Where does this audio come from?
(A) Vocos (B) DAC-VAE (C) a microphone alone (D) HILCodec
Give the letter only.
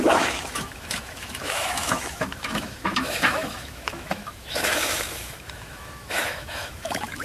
B